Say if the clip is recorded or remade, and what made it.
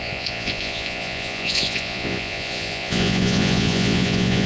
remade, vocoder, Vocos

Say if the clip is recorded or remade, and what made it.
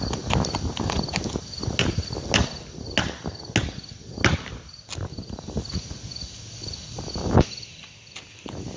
recorded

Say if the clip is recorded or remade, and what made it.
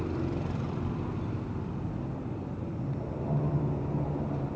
recorded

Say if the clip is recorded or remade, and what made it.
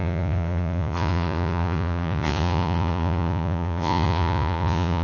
remade, vocoder, Vocos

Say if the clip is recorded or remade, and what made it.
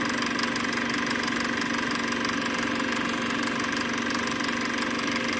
recorded